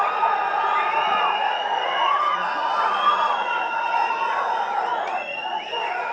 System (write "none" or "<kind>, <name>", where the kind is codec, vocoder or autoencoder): vocoder, Vocos